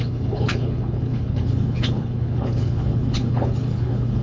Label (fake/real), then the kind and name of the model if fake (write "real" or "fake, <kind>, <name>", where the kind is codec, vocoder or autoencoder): fake, codec, HILCodec